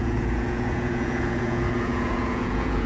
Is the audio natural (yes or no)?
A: no